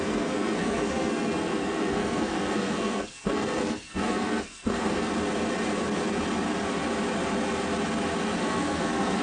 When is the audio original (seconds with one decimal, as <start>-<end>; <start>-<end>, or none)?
5.1-8.4